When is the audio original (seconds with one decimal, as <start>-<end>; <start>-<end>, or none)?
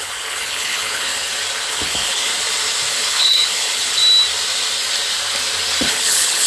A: 1.1-1.7; 2.3-2.9; 4.0-5.7